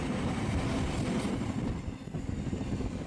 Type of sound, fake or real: fake